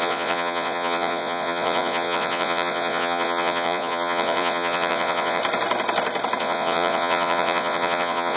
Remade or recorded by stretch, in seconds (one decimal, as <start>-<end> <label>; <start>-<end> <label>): 0.0-5.4 remade; 5.4-6.4 recorded; 6.4-8.4 remade